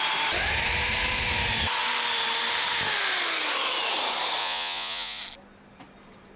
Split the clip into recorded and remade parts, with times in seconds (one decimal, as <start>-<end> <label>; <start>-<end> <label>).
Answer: 0.0-4.4 recorded; 4.4-5.2 remade; 5.2-6.4 recorded